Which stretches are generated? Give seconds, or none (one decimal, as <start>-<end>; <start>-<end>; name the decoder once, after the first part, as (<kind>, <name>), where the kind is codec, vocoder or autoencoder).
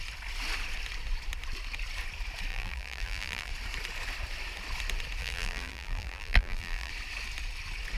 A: 2.5-3.5 (vocoder, BigVGAN v2); 5.2-6.9